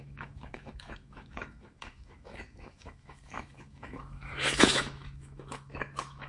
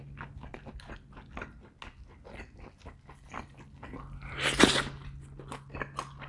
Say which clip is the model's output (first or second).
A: first